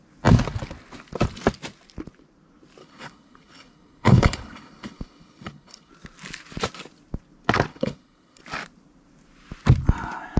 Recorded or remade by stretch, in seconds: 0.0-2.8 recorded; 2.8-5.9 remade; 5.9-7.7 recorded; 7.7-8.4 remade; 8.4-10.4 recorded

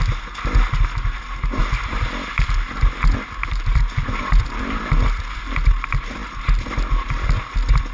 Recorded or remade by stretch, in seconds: 0.0-7.9 recorded

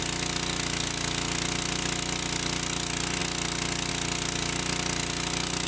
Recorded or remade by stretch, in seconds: 0.0-5.7 recorded

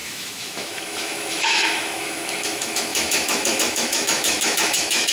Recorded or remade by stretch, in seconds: 0.0-5.1 remade

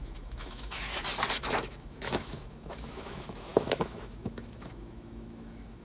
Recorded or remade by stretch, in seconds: 0.0-0.9 remade; 0.9-1.5 recorded; 1.5-5.8 remade

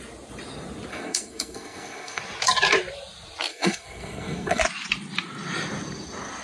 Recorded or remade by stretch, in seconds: 0.0-0.9 recorded; 0.9-2.2 remade; 2.2-3.5 recorded; 3.5-4.6 remade; 4.6-6.4 recorded